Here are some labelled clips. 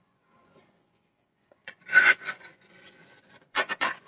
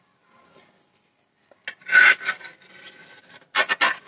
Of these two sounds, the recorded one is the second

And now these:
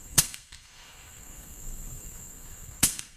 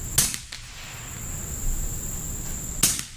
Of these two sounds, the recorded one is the second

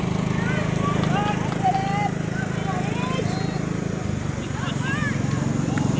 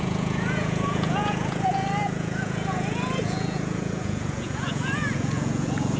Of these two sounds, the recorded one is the first